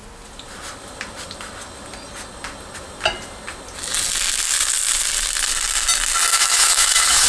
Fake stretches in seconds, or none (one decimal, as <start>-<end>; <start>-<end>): 6.3-7.3